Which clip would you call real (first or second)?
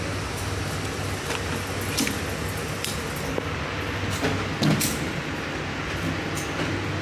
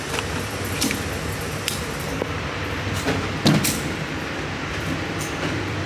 first